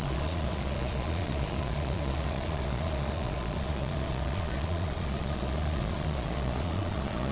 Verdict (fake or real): fake